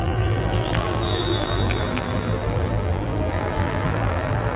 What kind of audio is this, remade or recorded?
remade